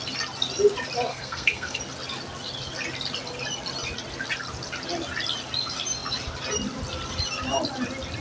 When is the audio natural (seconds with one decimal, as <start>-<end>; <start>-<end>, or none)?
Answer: 0.0-1.1; 1.8-8.2